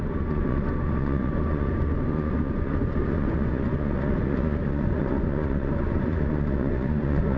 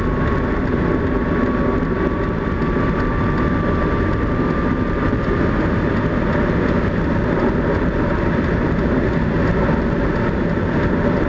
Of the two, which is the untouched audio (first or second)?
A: second